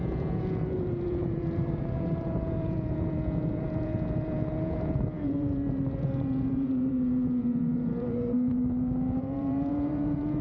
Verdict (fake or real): fake